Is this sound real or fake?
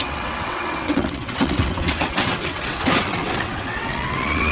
fake